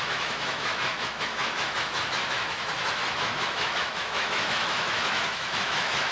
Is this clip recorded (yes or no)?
no